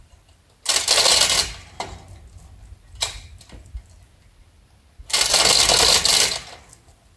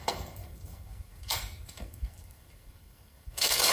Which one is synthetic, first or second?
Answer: second